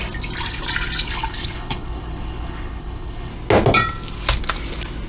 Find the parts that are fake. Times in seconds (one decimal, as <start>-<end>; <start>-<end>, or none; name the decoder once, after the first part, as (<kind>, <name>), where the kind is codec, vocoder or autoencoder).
1.1-3.3 (codec, HILCodec)